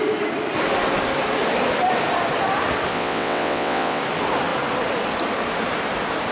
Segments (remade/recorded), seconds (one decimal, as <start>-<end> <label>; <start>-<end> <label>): 0.0-2.9 recorded; 2.9-4.0 remade; 4.0-6.3 recorded